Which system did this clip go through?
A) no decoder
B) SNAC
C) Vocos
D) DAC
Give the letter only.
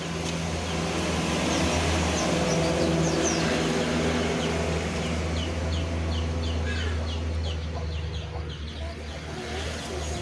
A